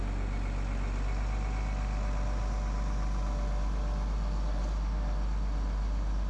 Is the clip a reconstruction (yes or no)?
no